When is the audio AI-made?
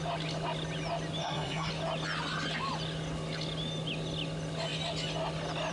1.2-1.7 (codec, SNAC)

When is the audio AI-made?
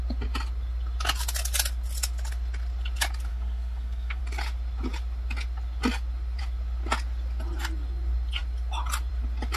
3.3-4.2 (codec, SNAC)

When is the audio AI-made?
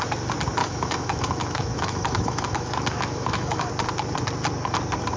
0.6-3.7 (autoencoder, DAC-VAE)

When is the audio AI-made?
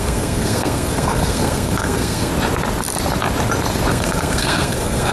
0.0-2.3 (codec, SNAC); 3.9-5.1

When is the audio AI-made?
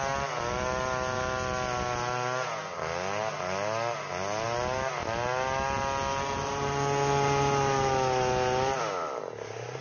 none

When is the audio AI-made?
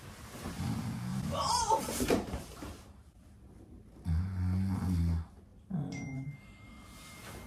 1.1-3.2 (vocoder, BigVGAN v2); 5.5-6.7